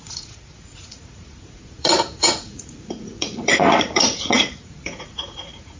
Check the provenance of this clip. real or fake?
fake